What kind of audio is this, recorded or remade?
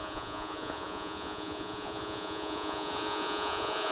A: remade